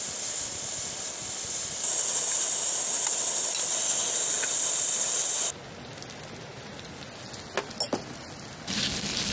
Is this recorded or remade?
recorded